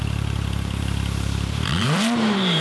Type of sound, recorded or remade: remade